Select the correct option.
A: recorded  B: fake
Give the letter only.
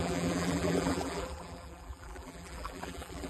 B